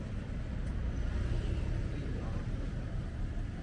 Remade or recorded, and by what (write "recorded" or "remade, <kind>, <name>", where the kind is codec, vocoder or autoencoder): recorded